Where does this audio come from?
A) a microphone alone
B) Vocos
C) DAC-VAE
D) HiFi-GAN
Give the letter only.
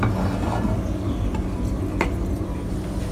A